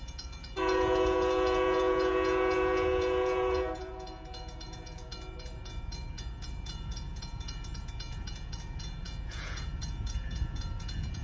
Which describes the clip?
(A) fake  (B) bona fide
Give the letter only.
A